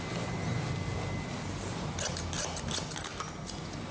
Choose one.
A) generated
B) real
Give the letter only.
B